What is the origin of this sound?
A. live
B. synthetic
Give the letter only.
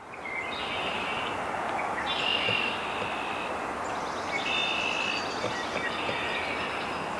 A